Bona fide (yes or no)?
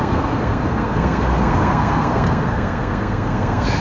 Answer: no